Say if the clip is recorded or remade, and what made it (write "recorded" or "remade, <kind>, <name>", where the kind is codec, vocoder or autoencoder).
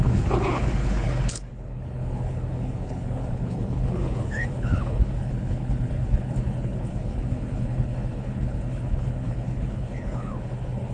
remade, codec, HILCodec